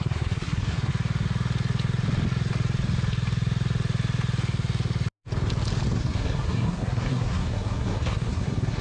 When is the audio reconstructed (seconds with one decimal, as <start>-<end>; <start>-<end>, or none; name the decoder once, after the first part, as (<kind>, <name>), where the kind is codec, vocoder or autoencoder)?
0.0-0.9 (codec, SNAC); 6.0-8.8